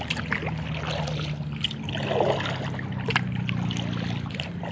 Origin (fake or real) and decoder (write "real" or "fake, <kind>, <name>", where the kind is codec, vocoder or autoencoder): real